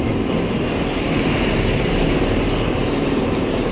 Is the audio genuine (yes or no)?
no